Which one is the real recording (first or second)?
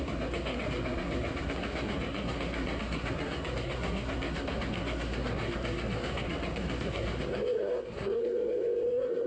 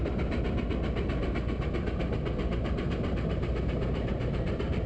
second